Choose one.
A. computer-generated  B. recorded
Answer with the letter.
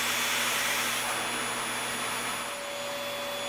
B